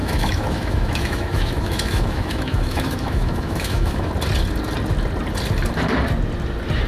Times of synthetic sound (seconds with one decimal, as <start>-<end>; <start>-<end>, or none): 0.0-4.1

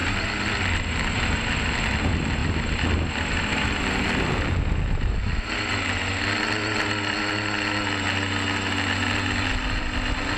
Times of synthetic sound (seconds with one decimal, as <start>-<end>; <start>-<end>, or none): none

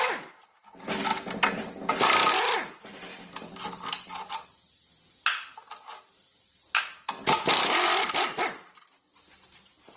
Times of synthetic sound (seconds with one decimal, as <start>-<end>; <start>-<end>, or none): 3.1-6.1

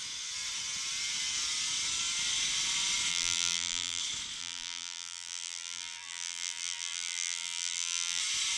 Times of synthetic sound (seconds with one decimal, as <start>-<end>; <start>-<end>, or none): 3.1-4.0; 4.4-8.2

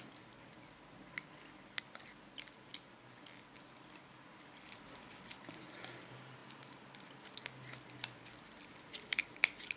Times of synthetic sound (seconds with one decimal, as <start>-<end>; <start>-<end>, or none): none

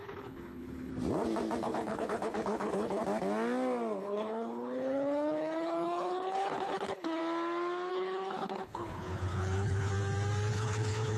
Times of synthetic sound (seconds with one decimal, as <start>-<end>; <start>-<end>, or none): 0.0-0.9; 1.6-3.0; 4.0-7.2; 7.9-9.9; 10.5-11.2

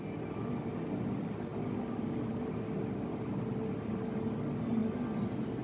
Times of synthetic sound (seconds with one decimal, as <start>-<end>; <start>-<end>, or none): none